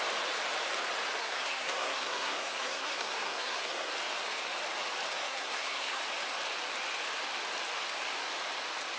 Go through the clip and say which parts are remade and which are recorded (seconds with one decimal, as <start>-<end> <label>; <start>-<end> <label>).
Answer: 0.0-1.2 recorded; 1.2-3.9 remade; 3.9-5.2 recorded; 5.2-6.0 remade; 6.0-9.0 recorded